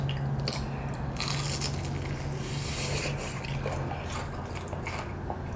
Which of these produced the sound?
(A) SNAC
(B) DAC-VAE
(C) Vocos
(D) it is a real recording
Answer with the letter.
D